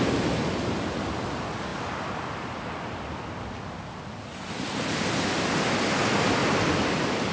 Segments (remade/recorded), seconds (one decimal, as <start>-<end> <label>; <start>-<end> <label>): 0.0-6.4 recorded; 6.4-7.3 remade